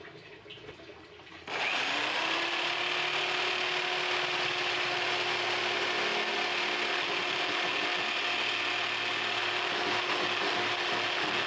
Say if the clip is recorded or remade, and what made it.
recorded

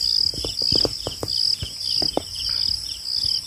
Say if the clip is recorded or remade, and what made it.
recorded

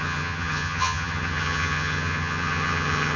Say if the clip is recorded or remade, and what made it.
remade, vocoder, HiFi-GAN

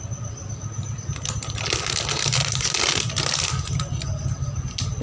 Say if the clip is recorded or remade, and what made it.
recorded